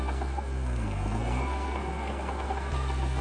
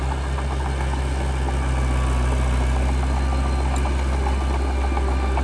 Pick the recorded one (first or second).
second